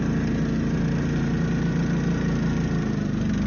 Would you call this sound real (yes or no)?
yes